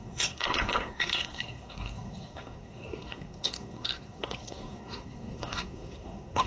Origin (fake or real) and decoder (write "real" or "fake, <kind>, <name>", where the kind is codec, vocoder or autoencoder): fake, codec, SNAC